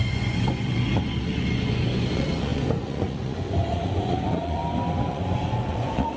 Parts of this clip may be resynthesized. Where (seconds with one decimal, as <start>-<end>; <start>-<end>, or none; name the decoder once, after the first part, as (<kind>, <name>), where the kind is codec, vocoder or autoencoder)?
0.0-4.6 (vocoder, Vocos); 5.1-6.2